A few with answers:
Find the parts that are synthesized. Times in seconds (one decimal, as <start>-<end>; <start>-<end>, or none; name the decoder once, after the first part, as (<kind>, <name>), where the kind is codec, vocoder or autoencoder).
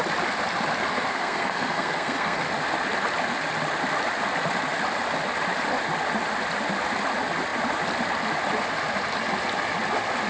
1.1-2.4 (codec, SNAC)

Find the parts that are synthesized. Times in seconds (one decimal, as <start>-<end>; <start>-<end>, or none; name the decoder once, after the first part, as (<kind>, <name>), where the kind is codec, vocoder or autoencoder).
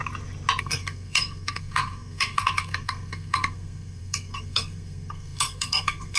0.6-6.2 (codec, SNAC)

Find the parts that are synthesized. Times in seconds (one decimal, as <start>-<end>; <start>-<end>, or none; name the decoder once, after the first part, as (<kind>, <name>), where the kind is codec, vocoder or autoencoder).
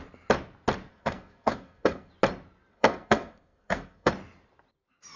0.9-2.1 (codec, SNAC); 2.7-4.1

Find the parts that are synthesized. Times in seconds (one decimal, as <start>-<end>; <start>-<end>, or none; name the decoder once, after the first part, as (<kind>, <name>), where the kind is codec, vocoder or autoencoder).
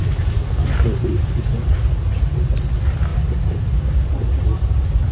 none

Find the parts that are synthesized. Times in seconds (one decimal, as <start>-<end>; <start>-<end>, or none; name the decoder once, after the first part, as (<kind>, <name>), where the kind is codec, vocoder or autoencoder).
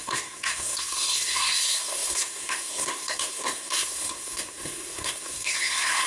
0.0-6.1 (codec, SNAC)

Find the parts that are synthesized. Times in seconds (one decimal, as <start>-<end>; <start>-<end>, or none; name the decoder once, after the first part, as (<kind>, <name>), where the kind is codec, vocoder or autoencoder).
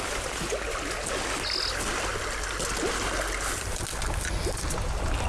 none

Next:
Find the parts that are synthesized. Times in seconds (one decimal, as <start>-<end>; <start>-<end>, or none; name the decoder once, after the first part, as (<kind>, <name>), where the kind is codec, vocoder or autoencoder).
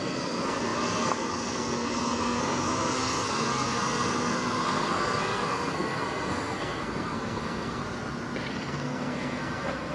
0.0-7.8 (codec, SNAC); 8.5-9.9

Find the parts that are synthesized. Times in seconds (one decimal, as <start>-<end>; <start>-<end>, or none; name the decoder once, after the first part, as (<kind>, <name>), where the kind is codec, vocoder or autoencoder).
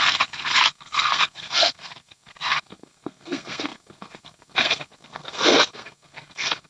0.0-6.7 (codec, SNAC)